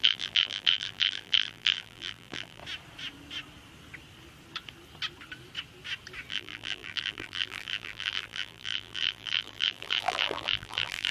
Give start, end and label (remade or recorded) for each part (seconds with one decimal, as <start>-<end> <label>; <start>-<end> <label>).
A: 0.0-2.6 remade; 2.6-6.3 recorded; 6.3-11.1 remade